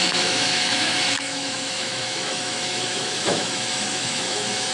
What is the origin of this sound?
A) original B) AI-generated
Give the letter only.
B